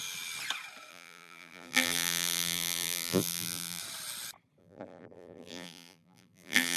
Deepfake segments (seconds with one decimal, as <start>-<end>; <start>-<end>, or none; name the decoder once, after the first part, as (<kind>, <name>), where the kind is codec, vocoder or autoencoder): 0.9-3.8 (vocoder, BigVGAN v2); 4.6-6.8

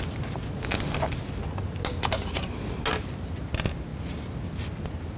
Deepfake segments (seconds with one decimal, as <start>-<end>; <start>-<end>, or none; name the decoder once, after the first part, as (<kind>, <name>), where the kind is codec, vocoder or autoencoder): none

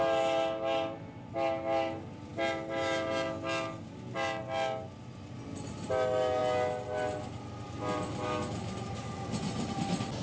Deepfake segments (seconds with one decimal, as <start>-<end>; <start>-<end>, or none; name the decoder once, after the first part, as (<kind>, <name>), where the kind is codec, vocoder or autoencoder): none

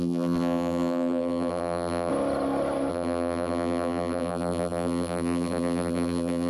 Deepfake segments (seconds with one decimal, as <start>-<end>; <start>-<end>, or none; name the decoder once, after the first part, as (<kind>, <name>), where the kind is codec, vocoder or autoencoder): 0.0-2.1 (vocoder, BigVGAN v2); 2.9-6.5

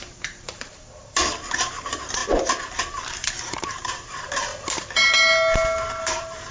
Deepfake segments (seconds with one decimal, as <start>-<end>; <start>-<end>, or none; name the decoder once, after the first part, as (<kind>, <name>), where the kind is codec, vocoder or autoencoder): 0.0-2.2 (vocoder, BigVGAN v2); 2.9-4.5; 6.0-6.5

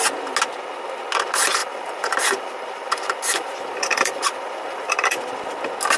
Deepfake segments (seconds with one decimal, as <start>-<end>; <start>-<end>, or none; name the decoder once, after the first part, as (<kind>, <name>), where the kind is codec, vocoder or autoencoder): 1.6-5.2 (vocoder, BigVGAN v2)